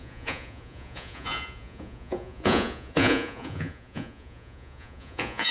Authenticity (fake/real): fake